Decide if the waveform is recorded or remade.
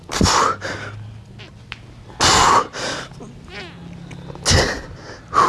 recorded